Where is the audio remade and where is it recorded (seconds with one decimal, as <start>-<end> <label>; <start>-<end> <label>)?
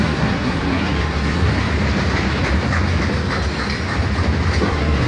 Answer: 0.0-1.5 remade; 1.5-4.6 recorded; 4.6-5.1 remade